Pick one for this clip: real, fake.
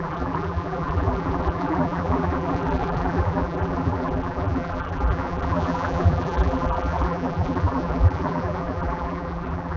fake